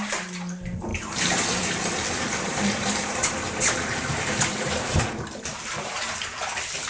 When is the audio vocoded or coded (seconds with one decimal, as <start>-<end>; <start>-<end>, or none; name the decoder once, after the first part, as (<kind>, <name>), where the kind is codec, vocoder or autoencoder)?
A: 0.9-5.0 (vocoder, BigVGAN v2)